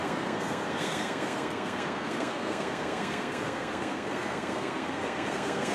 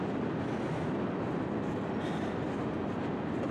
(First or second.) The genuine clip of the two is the second